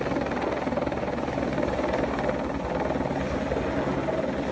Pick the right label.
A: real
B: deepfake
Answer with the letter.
A